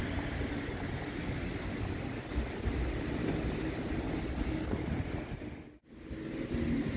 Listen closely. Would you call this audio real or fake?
real